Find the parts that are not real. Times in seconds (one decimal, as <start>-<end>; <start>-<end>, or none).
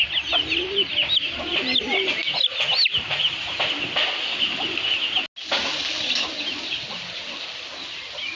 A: none